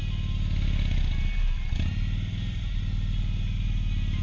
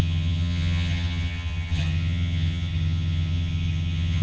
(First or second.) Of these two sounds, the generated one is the second